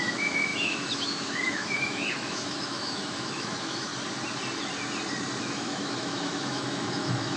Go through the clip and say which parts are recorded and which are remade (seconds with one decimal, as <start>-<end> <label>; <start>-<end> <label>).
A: 0.0-3.9 remade; 3.9-5.4 recorded; 5.4-7.4 remade